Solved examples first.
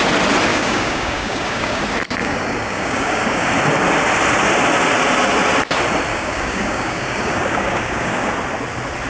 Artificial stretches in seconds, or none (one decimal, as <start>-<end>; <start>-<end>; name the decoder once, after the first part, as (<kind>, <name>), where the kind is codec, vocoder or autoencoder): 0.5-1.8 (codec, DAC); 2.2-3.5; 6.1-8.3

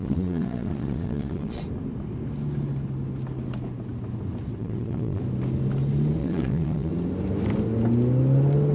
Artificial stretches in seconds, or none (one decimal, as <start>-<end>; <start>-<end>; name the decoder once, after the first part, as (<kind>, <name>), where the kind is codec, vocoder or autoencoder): 0.0-1.6 (vocoder, Vocos); 4.6-5.2; 6.2-6.9

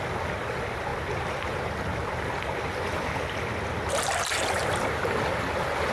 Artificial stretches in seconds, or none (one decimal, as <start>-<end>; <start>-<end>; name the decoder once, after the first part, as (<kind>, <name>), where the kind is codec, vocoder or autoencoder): none